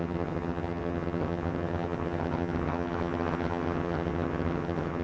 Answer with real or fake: fake